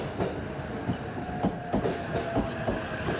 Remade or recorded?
recorded